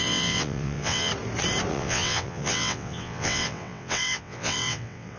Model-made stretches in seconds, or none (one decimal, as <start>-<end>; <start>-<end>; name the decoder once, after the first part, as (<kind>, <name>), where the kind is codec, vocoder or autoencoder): 0.0-1.1 (vocoder, WaveNeXt); 1.7-5.2